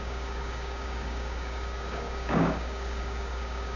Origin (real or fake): fake